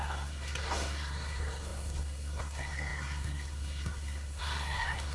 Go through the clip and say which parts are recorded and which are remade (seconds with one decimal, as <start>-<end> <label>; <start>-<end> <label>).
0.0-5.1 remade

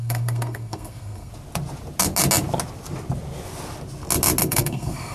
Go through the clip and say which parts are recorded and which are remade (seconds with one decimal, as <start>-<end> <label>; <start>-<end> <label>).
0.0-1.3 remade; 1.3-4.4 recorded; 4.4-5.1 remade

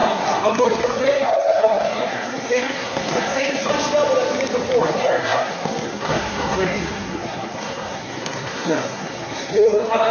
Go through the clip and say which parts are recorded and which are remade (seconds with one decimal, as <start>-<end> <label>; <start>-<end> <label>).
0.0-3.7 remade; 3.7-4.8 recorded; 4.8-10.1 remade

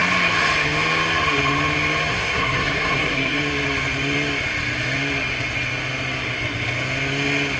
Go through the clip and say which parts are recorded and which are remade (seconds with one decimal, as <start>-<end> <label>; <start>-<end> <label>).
0.0-2.1 recorded; 2.1-3.4 remade; 3.4-7.6 recorded

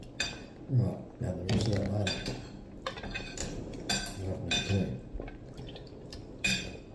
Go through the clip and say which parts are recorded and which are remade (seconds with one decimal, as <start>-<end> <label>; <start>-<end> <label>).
0.0-6.9 recorded

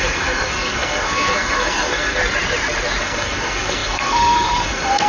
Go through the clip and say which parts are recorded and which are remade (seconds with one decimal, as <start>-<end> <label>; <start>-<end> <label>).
0.0-2.2 remade; 2.2-3.0 recorded; 3.0-5.1 remade

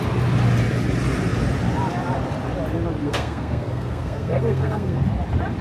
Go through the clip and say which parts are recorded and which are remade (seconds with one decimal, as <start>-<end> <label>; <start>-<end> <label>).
0.0-3.0 recorded; 3.0-5.0 remade; 5.0-5.6 recorded

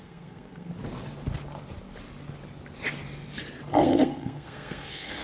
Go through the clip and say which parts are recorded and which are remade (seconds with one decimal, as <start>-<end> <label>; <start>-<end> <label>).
0.0-0.7 remade; 0.7-3.8 recorded; 3.8-5.2 remade